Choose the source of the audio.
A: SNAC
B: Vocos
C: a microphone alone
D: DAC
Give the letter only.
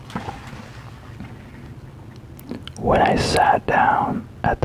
C